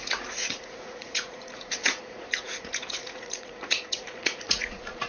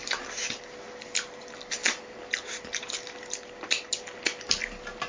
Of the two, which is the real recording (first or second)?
second